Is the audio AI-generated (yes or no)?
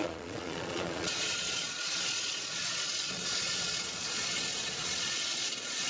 yes